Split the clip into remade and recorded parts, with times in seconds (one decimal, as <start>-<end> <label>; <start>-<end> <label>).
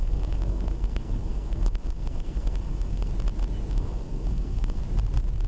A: 0.0-3.1 remade; 3.1-3.7 recorded; 3.7-4.8 remade; 4.8-5.5 recorded